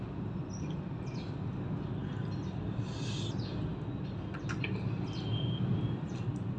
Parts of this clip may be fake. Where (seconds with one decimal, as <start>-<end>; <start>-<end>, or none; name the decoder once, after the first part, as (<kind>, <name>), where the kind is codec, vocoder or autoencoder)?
none